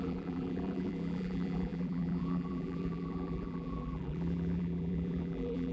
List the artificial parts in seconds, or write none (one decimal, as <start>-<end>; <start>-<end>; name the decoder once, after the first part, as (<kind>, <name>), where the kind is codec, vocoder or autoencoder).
0.0-5.7 (vocoder, BigVGAN v2)